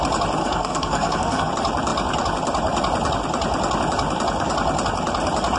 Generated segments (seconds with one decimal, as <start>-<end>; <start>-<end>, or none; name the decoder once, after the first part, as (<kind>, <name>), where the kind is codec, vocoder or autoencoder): 0.4-1.5 (codec, SNAC)